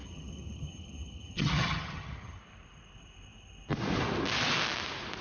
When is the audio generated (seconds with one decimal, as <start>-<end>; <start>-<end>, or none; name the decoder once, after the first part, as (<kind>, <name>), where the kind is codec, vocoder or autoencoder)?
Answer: 0.0-2.4 (vocoder, HiFi-GAN)